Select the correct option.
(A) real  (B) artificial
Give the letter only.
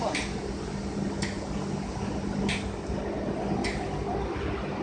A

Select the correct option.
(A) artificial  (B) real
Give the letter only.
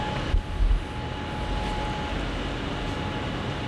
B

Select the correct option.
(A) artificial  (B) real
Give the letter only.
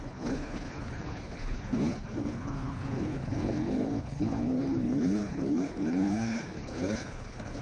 A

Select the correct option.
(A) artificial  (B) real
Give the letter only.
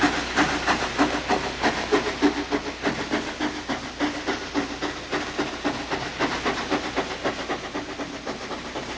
B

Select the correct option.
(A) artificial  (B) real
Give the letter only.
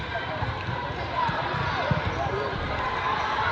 B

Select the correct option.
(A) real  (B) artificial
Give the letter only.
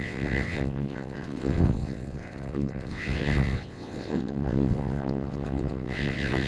B